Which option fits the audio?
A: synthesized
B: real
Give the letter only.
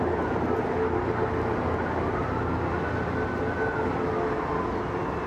B